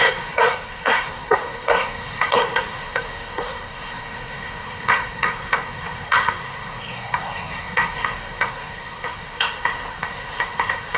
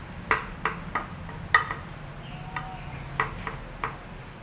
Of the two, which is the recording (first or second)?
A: second